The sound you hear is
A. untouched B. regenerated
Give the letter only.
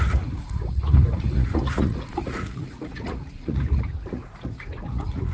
B